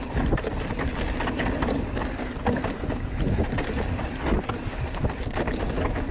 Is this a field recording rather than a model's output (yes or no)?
yes